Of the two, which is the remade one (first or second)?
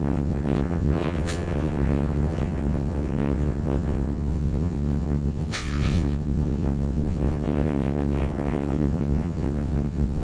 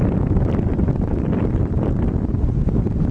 first